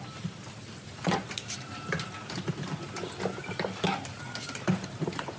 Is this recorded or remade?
recorded